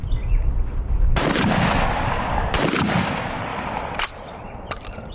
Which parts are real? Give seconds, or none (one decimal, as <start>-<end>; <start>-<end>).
0.0-3.5